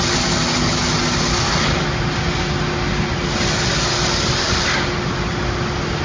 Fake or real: real